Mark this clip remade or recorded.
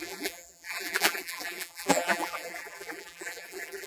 remade